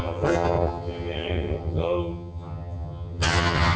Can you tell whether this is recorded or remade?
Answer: remade